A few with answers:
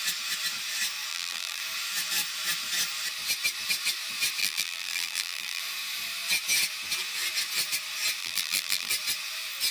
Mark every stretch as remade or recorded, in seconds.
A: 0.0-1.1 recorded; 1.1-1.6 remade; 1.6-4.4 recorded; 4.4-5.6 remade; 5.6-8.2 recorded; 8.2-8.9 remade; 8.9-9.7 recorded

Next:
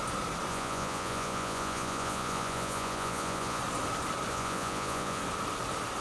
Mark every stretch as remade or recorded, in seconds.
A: 0.0-0.5 recorded; 0.5-3.6 remade; 3.6-4.3 recorded; 4.3-5.2 remade; 5.2-6.0 recorded

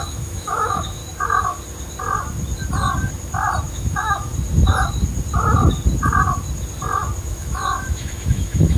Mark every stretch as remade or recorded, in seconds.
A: 0.0-1.0 remade; 1.0-3.7 recorded; 3.7-4.3 remade; 4.3-7.2 recorded; 7.2-8.8 remade

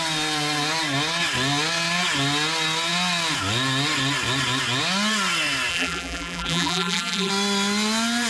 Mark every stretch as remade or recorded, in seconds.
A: 0.0-5.7 recorded; 5.7-7.3 remade; 7.3-8.3 recorded

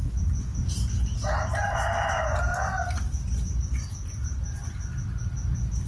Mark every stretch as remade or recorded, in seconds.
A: 0.0-5.9 recorded

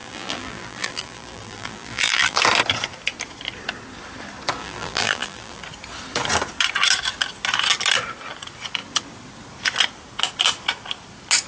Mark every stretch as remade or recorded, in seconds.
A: 0.0-2.4 remade; 2.4-4.6 recorded; 4.6-5.6 remade; 5.6-11.5 recorded

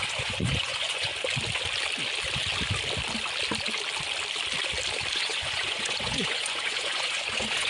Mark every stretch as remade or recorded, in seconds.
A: 0.0-1.1 remade; 1.1-5.1 recorded; 5.1-7.7 remade